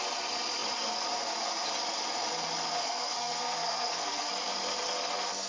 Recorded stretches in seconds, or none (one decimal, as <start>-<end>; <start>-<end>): 0.0-2.8; 4.3-5.5